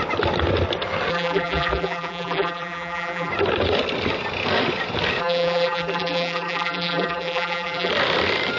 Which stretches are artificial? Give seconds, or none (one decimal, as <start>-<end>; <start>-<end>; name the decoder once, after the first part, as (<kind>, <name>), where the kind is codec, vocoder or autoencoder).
1.1-3.3 (vocoder, BigVGAN v2); 5.2-7.9